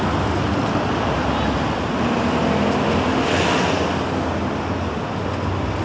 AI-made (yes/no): no